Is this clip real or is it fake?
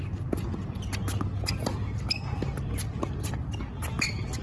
real